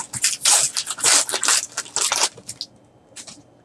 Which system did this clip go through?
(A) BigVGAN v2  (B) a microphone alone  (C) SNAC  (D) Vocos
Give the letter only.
B